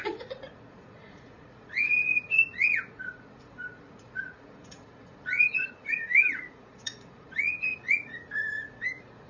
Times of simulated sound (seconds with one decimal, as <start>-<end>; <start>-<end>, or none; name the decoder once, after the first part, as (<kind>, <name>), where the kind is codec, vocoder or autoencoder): 0.0-9.3 (vocoder, Vocos)